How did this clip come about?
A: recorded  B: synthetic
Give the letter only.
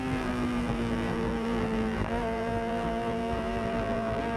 B